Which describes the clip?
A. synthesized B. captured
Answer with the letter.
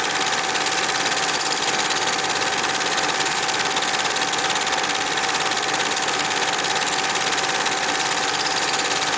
B